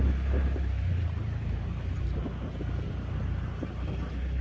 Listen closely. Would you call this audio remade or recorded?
recorded